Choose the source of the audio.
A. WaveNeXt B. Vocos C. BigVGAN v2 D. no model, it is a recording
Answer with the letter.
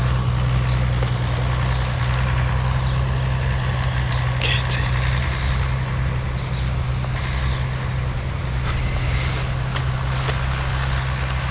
D